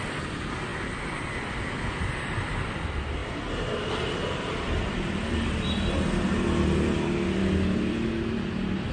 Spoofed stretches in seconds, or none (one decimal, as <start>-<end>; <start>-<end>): 3.2-5.9